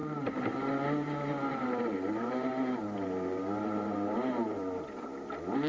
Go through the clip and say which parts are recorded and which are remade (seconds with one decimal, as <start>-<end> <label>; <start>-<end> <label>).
0.0-0.7 remade; 0.7-1.5 recorded; 1.5-4.9 remade; 4.9-5.7 recorded